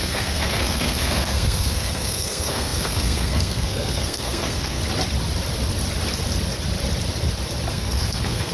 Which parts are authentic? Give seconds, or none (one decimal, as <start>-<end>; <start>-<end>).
4.8-7.7